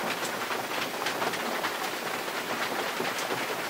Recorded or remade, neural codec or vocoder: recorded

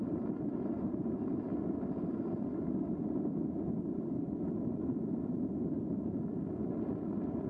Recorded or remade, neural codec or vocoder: recorded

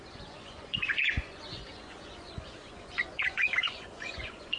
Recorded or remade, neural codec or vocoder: remade, vocoder, Vocos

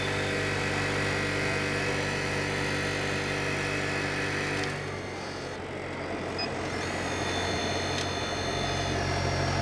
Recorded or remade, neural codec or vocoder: recorded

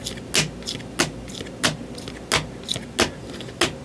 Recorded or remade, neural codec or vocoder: recorded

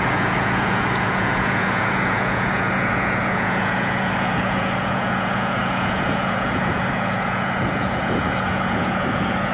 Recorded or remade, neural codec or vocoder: remade, vocoder, Vocos